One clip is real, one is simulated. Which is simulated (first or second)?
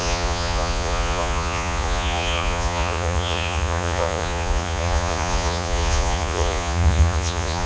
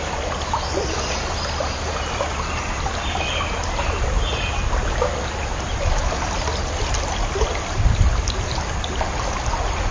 first